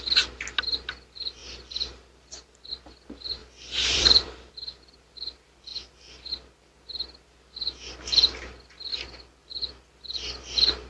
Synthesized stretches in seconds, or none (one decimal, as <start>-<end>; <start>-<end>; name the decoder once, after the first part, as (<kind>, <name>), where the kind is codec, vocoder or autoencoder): 1.4-2.7 (vocoder, BigVGAN v2); 3.4-4.5